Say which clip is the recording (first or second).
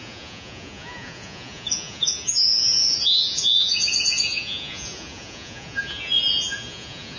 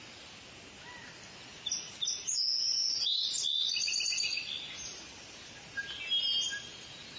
second